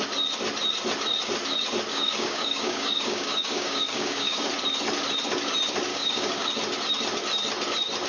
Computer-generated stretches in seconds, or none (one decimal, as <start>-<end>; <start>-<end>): 1.9-4.5; 5.9-6.5